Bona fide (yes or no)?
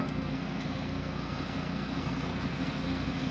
no